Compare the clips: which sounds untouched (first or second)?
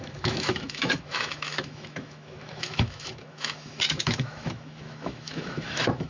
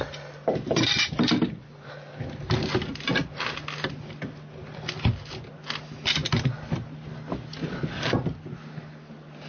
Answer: second